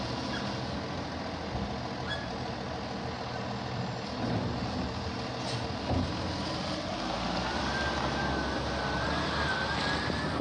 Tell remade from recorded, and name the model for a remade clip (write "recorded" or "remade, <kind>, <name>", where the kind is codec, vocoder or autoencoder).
recorded